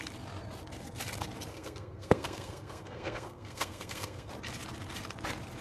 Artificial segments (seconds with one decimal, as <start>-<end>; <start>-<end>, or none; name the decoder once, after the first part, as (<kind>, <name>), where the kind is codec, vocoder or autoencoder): 1.5-4.3 (codec, SNAC)